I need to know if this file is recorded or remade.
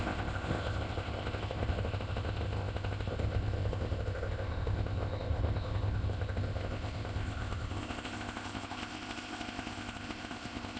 remade